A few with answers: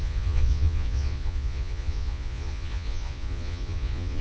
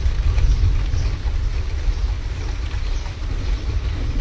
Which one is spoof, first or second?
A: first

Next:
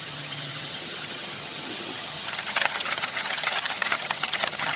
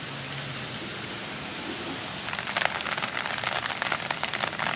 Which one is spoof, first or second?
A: first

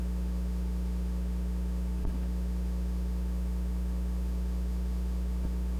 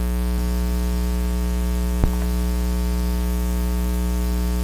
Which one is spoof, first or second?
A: first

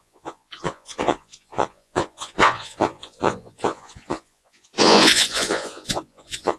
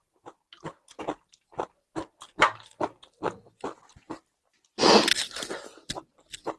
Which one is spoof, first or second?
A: first